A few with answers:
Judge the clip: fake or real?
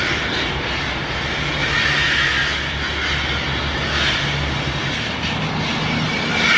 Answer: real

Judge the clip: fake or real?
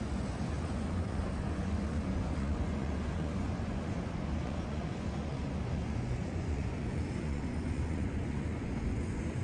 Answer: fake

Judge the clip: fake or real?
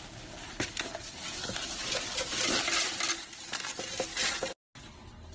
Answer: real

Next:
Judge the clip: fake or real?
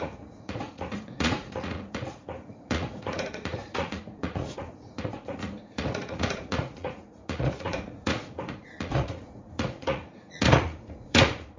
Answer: fake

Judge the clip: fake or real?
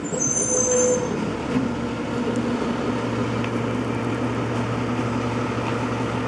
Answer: real